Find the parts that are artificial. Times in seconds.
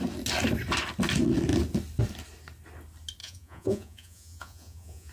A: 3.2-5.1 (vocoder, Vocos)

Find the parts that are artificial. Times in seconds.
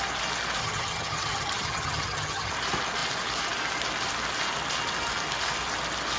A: 0.6-2.5 (vocoder, HiFi-GAN)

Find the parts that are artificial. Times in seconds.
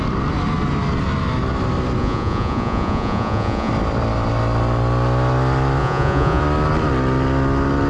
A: 2.0-3.7 (vocoder, Vocos); 5.8-6.4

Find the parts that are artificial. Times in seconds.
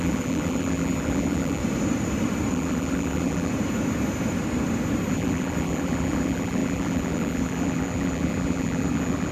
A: 0.0-1.6 (vocoder, BigVGAN v2); 2.5-3.5; 5.1-9.3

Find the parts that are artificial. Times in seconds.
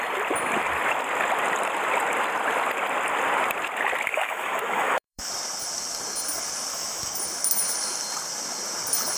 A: 4.1-5.3 (autoencoder, DAC-VAE); 6.7-7.2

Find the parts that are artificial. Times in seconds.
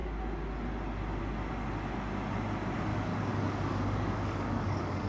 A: 2.9-5.1 (codec, DAC)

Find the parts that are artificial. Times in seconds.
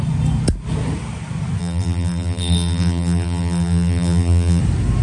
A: 1.6-4.6 (vocoder, BigVGAN v2)